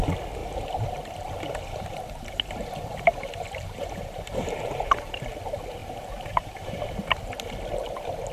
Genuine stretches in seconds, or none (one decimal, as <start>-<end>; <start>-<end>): 0.0-0.4; 5.1-5.8; 6.9-8.3

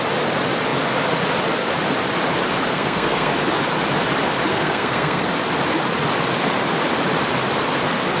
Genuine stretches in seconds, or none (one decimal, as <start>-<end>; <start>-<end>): 0.0-2.7; 3.3-4.5; 5.3-8.2

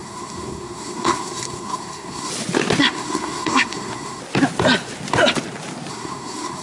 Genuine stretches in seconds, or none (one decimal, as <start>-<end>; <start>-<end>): 2.3-2.8; 4.2-5.9